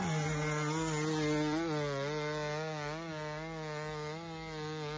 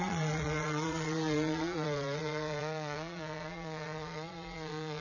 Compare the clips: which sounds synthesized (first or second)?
second